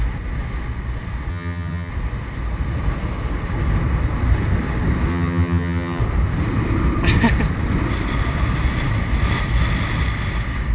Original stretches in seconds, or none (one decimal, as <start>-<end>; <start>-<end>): 0.0-1.3; 1.9-5.1; 6.0-10.7